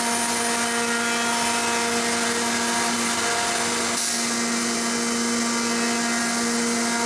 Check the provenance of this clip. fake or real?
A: real